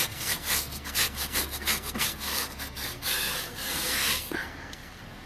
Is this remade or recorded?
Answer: remade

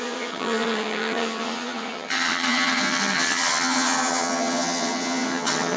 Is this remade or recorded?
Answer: remade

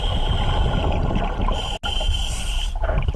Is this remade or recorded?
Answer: recorded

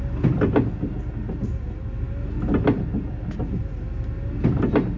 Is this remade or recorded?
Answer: recorded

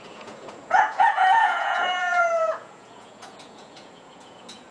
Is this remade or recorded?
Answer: remade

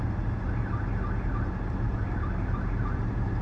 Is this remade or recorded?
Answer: recorded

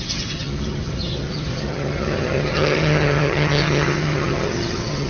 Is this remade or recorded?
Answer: remade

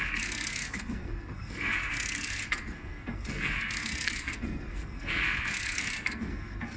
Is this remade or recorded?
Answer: remade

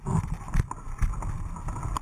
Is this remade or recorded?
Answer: recorded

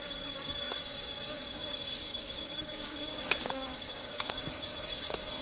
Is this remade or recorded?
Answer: remade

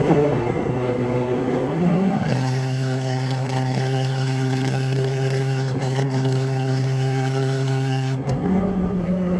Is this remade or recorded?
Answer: remade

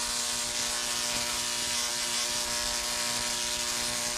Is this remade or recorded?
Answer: recorded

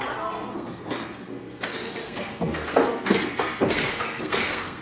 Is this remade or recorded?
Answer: remade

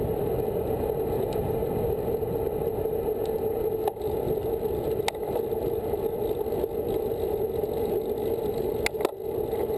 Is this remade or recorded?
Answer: recorded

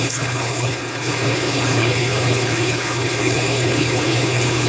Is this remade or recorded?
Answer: remade